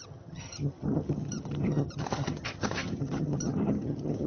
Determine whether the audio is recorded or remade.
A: remade